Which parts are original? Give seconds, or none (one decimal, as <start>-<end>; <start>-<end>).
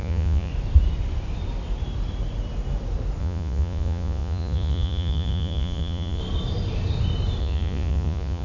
0.5-3.2; 6.2-7.4